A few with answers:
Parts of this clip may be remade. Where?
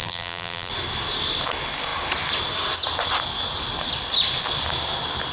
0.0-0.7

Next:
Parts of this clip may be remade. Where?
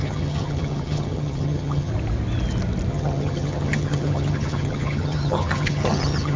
0.0-1.9; 2.9-6.4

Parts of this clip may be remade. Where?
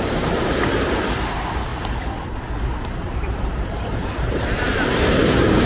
0.0-1.7; 2.7-5.7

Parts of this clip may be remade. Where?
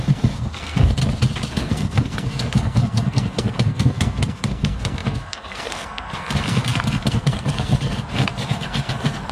0.0-1.0; 1.5-9.3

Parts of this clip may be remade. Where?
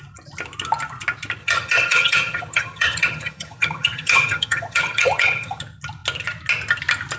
1.4-5.6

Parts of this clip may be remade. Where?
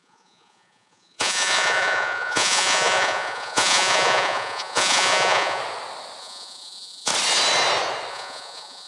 0.0-5.6; 6.2-7.1; 8.1-8.9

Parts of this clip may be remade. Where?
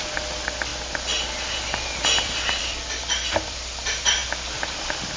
0.0-4.2; 4.8-5.2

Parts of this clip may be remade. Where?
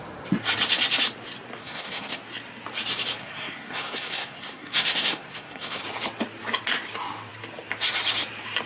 1.6-2.2; 3.2-5.8